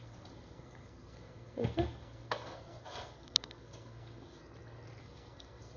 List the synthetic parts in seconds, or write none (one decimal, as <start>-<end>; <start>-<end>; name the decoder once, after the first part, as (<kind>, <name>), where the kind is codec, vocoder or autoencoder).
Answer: 0.0-4.4 (codec, SNAC); 5.0-5.8

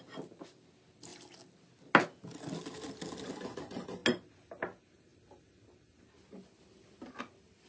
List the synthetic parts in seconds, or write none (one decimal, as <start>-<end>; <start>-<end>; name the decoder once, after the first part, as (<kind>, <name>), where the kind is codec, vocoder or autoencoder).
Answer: none